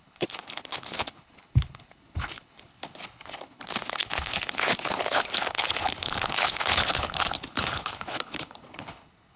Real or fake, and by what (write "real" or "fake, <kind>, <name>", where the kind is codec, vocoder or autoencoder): fake, codec, HILCodec